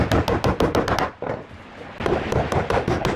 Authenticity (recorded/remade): recorded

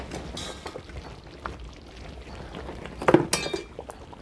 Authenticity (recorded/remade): recorded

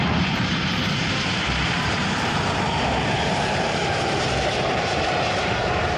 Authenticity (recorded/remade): remade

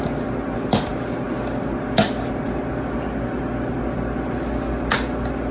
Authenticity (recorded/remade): recorded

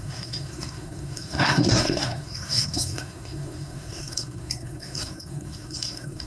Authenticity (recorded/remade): remade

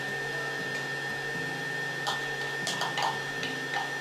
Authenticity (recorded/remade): recorded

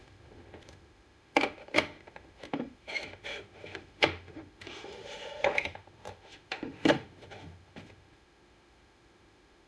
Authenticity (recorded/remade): remade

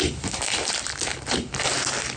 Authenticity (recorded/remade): recorded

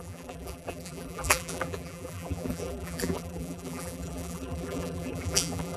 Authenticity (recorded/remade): remade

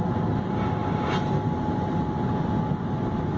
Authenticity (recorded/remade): recorded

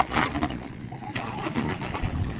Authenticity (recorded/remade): remade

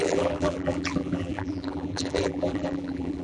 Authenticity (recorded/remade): remade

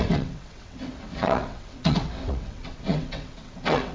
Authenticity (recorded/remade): remade